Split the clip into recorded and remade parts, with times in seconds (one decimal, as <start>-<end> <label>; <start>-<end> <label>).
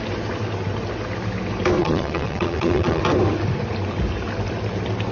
0.0-1.8 recorded; 1.8-3.0 remade; 3.0-5.1 recorded